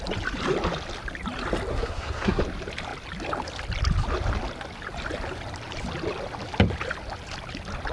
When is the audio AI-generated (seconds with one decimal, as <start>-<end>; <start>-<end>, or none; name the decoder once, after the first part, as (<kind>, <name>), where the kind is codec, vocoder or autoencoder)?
1.7-2.4 (codec, SNAC)